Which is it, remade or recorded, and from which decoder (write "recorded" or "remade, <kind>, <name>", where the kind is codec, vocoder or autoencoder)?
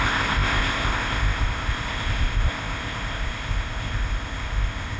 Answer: remade, codec, ZipCodec